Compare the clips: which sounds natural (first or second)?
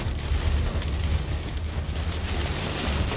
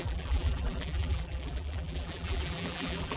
first